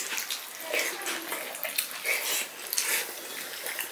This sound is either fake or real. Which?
real